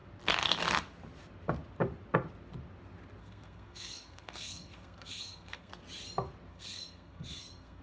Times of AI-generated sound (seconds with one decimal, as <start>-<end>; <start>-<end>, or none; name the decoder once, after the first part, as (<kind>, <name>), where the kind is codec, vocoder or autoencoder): 3.2-5.7 (codec, SNAC); 6.5-7.8

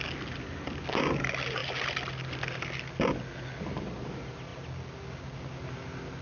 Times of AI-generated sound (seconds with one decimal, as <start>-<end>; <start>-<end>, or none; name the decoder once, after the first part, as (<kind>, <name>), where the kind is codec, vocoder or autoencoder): none